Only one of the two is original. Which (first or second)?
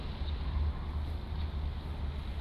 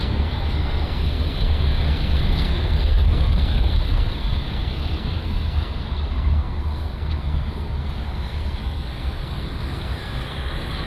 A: first